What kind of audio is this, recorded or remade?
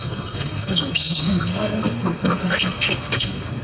remade